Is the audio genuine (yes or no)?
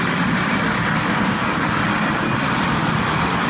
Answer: yes